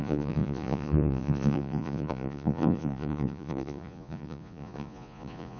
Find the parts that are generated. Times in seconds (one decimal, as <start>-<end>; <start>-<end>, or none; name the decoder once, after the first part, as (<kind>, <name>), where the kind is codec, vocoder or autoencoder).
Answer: 0.0-5.6 (vocoder, Vocos)